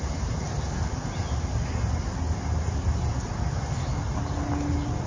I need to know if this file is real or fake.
real